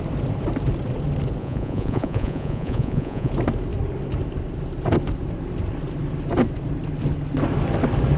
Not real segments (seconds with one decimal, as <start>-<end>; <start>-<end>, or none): 1.4-3.3